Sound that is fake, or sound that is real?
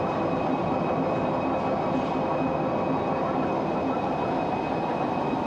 real